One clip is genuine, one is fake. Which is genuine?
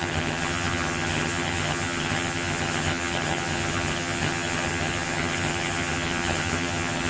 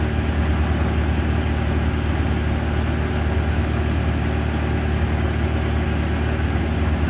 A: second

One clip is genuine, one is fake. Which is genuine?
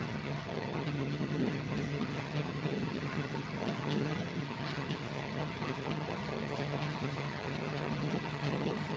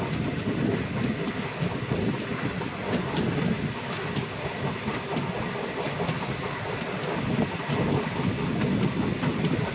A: second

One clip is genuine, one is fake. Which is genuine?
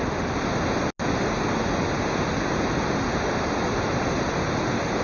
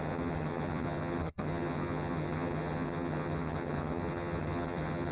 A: first